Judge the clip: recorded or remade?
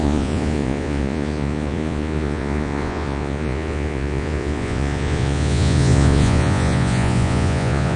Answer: remade